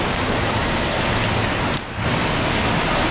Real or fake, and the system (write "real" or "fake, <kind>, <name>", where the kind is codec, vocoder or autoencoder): real